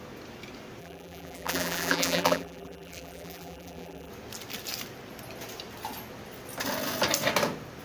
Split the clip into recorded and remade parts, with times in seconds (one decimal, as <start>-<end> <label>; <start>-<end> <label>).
0.0-0.8 recorded; 0.8-4.1 remade; 4.1-7.8 recorded